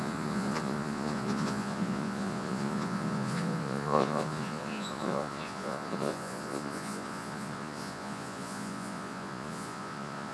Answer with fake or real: fake